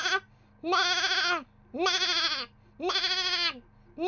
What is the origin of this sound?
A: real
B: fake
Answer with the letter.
A